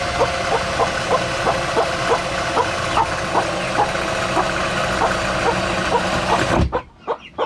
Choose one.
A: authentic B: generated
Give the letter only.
A